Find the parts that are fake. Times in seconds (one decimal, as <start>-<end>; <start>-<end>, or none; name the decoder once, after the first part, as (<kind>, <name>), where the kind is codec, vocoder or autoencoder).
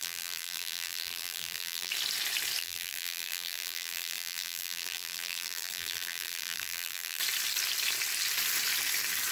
0.0-1.9 (vocoder, BigVGAN v2); 2.6-7.2